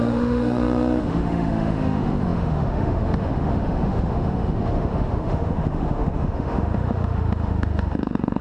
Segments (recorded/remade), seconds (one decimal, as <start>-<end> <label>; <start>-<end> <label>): 0.0-8.4 remade